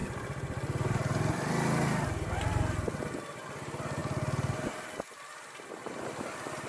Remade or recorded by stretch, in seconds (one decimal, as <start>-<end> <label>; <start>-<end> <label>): 0.0-6.7 recorded